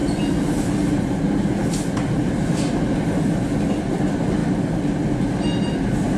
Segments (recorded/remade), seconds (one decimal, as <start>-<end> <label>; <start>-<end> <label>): 0.0-6.2 recorded